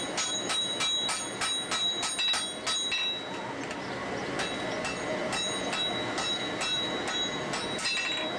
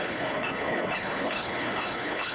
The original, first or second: first